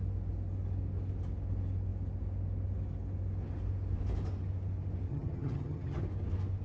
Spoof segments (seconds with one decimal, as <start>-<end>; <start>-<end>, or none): 5.1-6.0